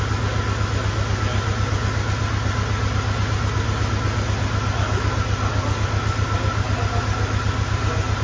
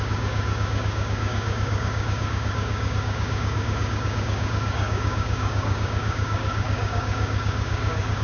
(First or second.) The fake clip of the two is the second